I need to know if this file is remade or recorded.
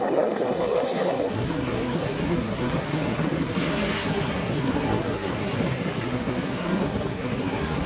remade